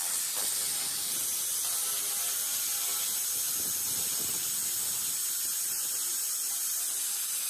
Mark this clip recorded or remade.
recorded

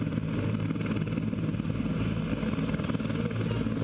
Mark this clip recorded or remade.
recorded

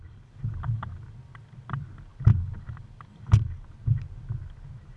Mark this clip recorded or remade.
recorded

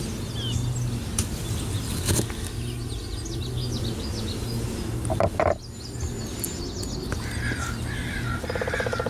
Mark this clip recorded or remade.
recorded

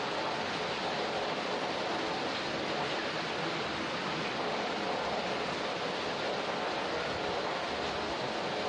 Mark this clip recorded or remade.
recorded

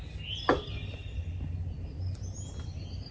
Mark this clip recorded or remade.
recorded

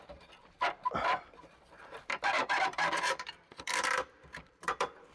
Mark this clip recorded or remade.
remade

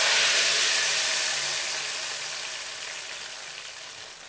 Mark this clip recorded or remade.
recorded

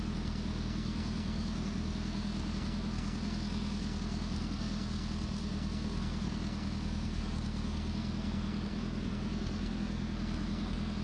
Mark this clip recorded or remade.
remade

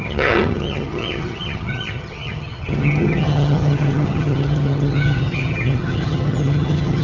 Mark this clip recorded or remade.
remade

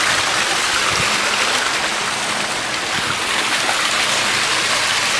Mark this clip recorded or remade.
recorded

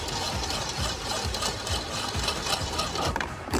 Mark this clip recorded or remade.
remade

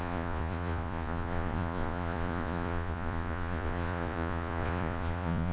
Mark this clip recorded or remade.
remade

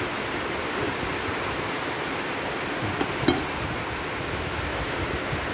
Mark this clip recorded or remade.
recorded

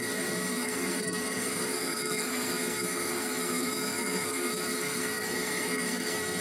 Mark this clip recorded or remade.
remade